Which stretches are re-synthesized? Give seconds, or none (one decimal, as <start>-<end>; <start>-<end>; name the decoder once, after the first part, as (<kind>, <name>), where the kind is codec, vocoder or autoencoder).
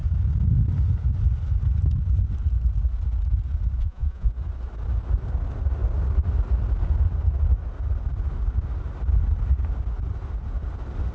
3.8-4.3 (vocoder, Vocos)